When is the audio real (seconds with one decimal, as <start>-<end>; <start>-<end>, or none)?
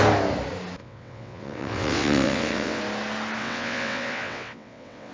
0.0-0.8; 2.8-3.4